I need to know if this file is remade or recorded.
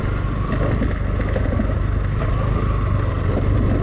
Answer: recorded